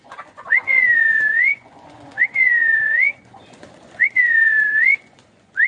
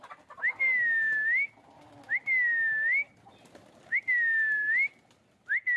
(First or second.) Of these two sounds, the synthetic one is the first